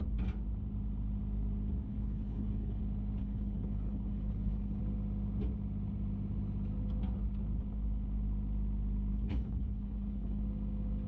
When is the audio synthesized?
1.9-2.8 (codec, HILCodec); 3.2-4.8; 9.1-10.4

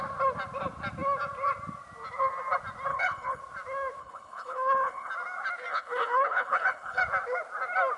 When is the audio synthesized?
2.9-3.4 (codec, HILCodec); 4.0-5.1; 5.7-7.0

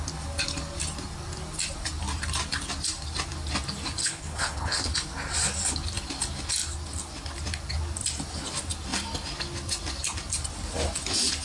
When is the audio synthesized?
4.0-4.9 (codec, HILCodec)

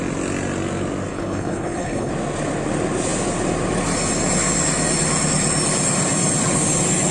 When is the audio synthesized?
1.1-2.1 (codec, HILCodec)

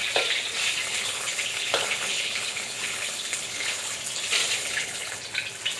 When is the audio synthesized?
0.9-3.9 (codec, HILCodec); 4.6-5.2

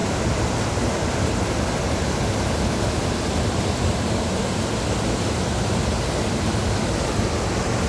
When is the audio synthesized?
none

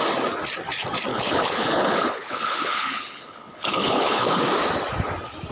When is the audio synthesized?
1.1-4.4 (codec, HILCodec)

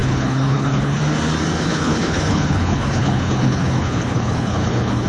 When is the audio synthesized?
0.0-1.0 (codec, HILCodec); 1.7-5.1